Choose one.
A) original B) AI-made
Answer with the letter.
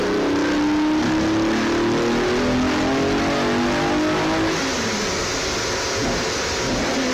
A